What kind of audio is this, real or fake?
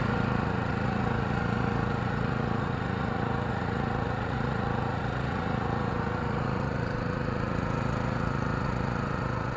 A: fake